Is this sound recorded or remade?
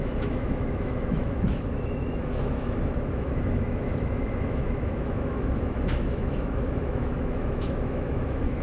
remade